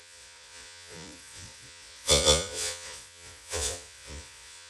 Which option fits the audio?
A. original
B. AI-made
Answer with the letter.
B